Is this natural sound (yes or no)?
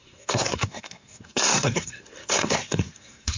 no